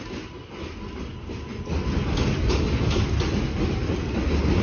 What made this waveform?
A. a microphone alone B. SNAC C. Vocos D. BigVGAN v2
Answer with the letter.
A